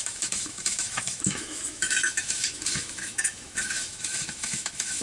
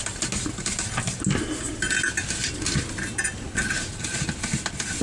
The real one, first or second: second